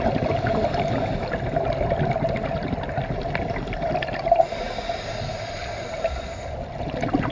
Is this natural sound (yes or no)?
yes